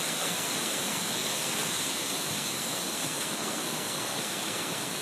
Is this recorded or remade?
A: remade